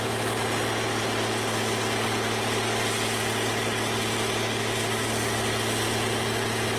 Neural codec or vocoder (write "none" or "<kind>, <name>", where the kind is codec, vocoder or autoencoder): none